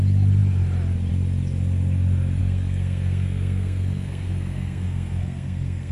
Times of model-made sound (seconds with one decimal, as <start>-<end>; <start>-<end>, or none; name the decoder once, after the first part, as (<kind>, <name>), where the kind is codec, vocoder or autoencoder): 2.4-5.9 (codec, SNAC)